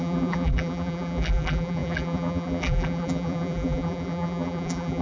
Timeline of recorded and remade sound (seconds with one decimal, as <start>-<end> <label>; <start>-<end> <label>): 0.0-5.0 remade